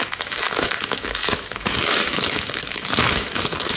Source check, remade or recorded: remade